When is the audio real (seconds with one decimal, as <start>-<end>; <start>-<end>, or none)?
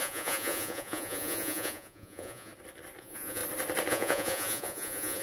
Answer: 2.5-3.0; 3.4-3.9